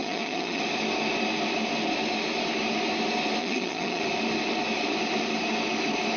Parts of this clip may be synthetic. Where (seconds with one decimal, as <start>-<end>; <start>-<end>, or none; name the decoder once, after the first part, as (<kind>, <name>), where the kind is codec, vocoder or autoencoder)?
0.0-0.6 (vocoder, HiFi-GAN); 3.4-4.0